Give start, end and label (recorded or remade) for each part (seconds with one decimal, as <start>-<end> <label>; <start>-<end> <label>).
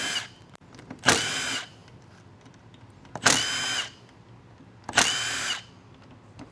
0.0-6.5 recorded